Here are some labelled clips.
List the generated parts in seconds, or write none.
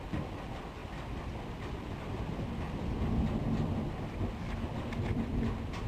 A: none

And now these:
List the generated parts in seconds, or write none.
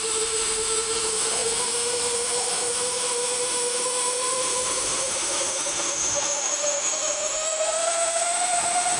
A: 0.0-9.0 (autoencoder, DAC-VAE)